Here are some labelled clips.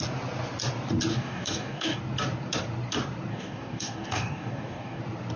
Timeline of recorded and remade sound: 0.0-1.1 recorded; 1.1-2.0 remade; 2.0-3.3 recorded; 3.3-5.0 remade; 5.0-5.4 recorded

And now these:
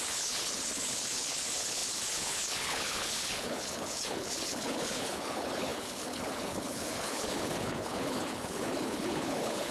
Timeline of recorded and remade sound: 0.0-9.7 remade